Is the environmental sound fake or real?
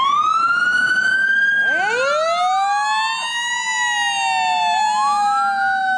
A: real